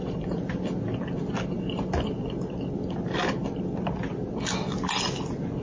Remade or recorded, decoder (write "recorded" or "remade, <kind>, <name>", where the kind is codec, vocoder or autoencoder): recorded